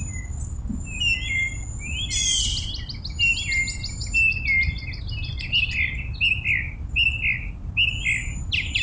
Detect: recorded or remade recorded